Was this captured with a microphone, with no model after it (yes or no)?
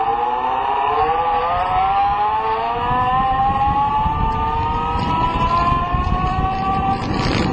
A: yes